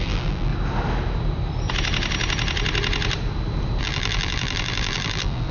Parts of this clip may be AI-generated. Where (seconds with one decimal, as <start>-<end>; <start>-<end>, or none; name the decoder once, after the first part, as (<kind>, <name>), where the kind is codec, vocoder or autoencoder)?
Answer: 0.0-0.5 (vocoder, BigVGAN v2); 3.8-5.5